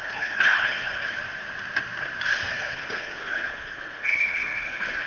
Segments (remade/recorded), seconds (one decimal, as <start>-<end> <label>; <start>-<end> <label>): 0.0-1.2 remade; 1.2-2.5 recorded; 2.5-5.1 remade